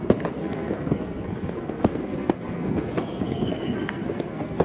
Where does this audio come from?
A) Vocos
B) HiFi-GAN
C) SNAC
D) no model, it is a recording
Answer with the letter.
C